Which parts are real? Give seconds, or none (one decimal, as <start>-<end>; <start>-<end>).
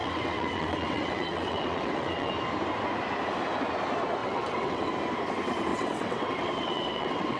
2.3-4.2; 4.9-5.7